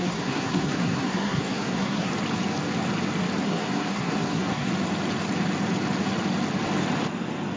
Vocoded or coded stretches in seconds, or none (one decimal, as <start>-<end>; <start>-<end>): 0.0-2.1; 3.4-4.7